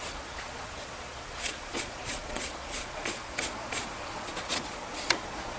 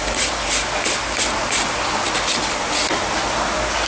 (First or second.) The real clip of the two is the second